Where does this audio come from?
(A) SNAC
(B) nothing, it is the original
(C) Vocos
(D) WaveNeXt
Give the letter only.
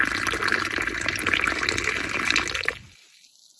B